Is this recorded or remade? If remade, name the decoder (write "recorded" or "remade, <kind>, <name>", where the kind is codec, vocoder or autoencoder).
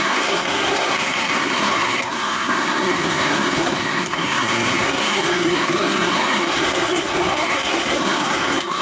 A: remade, codec, SNAC